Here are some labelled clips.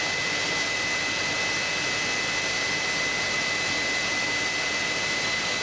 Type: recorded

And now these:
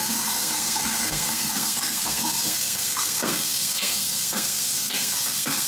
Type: remade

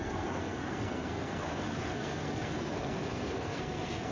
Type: remade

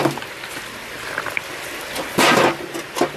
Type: recorded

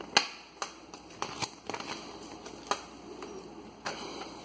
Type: recorded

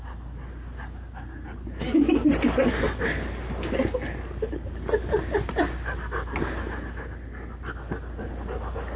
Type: recorded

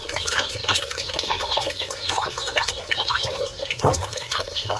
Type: remade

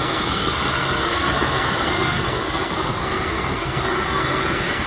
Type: remade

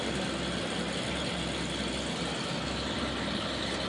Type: recorded